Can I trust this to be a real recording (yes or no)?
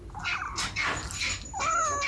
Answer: yes